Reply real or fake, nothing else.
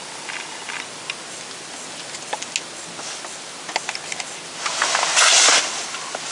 real